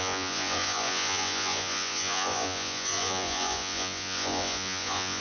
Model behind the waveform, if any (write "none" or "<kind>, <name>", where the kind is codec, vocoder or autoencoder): vocoder, Vocos